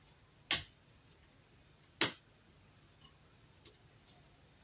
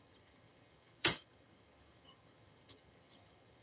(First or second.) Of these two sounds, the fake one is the second